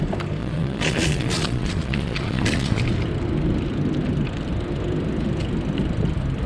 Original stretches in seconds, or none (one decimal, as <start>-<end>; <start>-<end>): 0.0-0.4; 2.8-6.5